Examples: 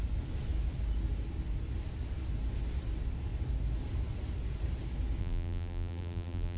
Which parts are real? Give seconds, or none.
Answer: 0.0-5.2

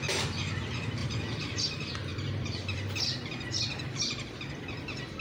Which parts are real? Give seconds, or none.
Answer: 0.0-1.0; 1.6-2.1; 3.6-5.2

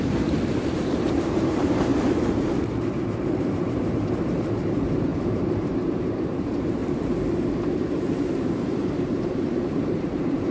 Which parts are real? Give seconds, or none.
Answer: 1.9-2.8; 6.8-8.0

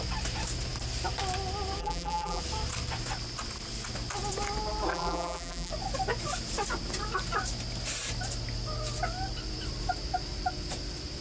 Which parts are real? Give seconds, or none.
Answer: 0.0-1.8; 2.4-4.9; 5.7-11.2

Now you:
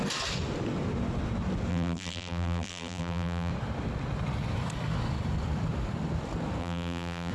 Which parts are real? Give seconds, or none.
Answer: 0.0-1.7; 3.5-6.6

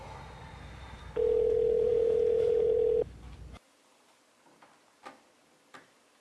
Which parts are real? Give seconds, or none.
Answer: 0.0-0.4; 1.0-1.9; 2.7-6.2

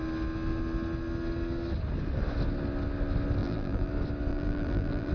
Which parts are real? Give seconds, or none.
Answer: 0.0-3.4; 3.9-4.3